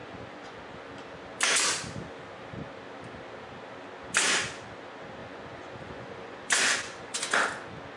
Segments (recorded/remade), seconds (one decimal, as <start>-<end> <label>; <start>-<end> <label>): 0.0-0.6 remade; 0.6-5.2 recorded; 5.2-7.4 remade; 7.4-8.0 recorded